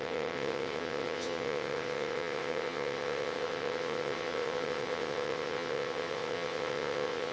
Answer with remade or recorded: remade